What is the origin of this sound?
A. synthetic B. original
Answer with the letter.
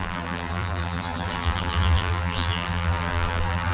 A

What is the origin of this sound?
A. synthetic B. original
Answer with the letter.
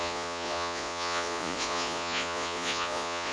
A